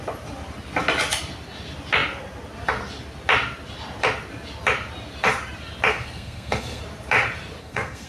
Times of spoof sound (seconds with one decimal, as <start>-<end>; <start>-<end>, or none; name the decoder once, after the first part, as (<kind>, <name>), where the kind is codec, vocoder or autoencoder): 5.9-6.8 (codec, SNAC); 7.6-8.1